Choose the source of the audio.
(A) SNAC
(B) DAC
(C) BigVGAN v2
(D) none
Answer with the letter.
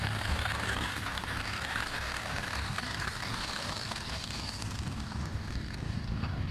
B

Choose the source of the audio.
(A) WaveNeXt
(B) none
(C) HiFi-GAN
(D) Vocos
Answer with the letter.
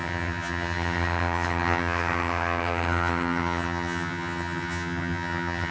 C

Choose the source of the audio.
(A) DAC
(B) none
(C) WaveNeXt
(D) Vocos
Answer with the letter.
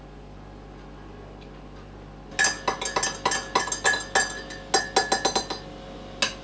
B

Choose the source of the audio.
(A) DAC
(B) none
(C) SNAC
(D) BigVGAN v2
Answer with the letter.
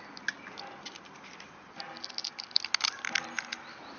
B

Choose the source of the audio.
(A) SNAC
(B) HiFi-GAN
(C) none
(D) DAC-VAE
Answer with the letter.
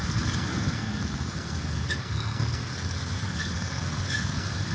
A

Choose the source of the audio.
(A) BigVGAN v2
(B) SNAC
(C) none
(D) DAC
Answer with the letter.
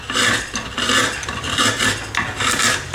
C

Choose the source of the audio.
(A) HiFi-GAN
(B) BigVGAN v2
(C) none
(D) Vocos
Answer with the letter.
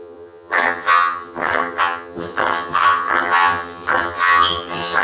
A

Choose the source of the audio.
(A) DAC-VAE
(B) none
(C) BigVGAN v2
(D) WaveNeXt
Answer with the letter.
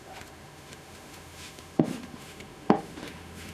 A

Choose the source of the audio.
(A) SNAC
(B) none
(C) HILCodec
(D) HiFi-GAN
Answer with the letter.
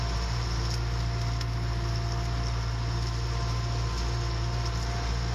B